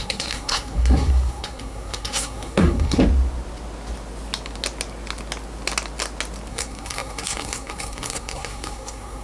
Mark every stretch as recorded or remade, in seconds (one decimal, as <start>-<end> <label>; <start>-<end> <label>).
0.0-3.0 remade; 3.0-6.5 recorded; 6.5-9.2 remade